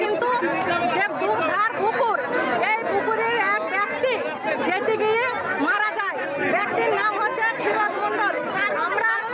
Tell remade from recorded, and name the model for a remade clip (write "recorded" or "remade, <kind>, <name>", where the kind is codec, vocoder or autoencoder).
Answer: recorded